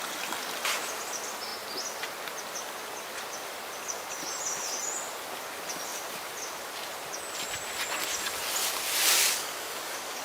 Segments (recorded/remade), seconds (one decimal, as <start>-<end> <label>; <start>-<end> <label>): 0.0-9.0 recorded; 9.0-10.2 remade